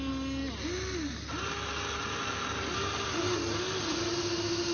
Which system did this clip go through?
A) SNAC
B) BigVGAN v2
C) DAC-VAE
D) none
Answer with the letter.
D